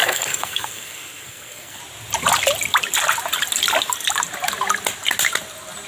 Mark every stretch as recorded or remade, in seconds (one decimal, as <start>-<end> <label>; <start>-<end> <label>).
0.0-1.8 remade; 1.8-5.9 recorded